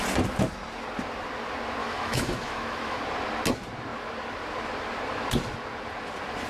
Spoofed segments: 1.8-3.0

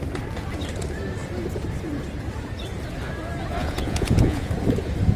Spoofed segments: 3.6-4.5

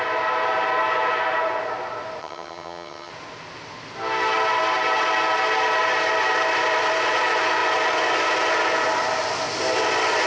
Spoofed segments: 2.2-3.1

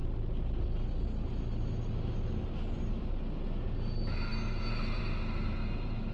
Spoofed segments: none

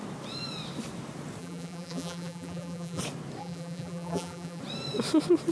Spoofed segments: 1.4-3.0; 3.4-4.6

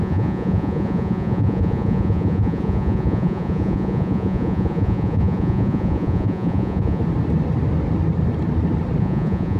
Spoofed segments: 0.0-7.0; 9.0-9.6